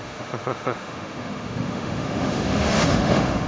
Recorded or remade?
remade